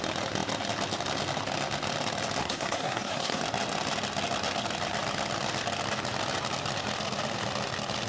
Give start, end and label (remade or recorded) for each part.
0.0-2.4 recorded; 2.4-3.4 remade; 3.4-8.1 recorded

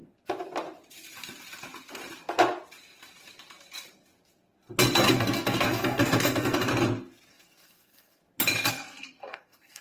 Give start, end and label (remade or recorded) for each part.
0.0-5.1 recorded; 5.1-6.7 remade; 6.7-7.3 recorded; 7.3-8.2 remade; 8.2-8.7 recorded; 8.7-9.8 remade

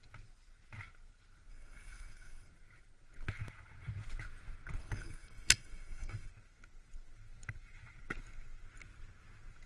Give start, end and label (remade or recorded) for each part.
0.0-1.5 recorded; 1.5-2.5 remade; 2.5-4.8 recorded; 4.8-6.3 remade; 6.3-9.7 recorded

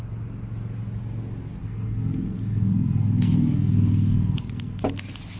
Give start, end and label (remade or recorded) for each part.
0.0-1.6 recorded; 1.6-4.8 remade; 4.8-5.4 recorded